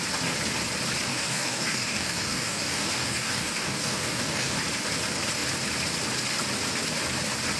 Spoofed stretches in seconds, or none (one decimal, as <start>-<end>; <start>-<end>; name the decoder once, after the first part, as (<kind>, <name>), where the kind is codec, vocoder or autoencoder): 1.1-4.6 (codec, DAC)